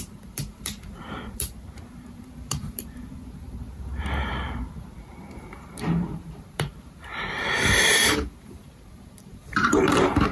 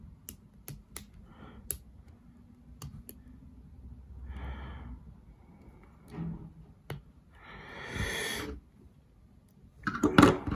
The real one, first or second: second